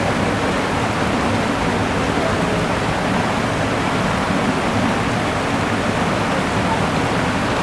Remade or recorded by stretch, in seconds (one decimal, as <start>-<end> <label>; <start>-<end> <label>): 0.0-7.6 recorded